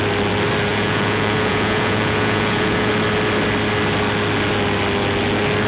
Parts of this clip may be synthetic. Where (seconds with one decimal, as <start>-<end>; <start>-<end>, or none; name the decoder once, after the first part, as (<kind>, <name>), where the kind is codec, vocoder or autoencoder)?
0.7-2.9 (vocoder, Vocos)